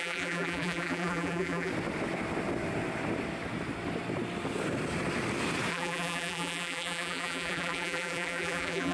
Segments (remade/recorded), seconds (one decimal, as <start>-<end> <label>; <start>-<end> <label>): 0.0-1.7 remade; 1.7-5.7 recorded; 5.7-8.9 remade